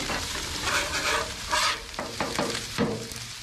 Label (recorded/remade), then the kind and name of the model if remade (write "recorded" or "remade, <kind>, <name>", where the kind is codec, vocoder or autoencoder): remade, vocoder, BigVGAN v2